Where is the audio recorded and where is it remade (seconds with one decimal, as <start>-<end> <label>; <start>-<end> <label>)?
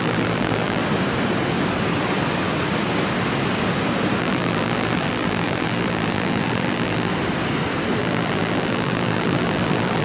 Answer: 0.0-0.8 remade; 0.8-4.2 recorded; 4.2-7.1 remade; 7.1-8.0 recorded; 8.0-10.0 remade